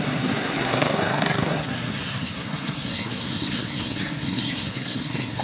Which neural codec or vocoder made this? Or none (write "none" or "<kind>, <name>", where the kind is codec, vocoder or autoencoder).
codec, SNAC